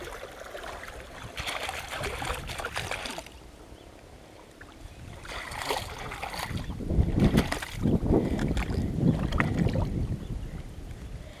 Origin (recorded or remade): remade